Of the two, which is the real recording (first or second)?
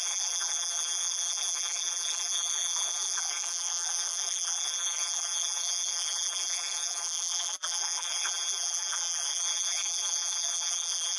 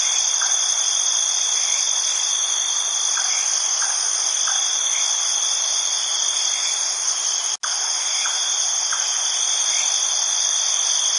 second